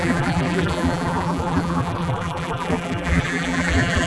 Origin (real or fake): fake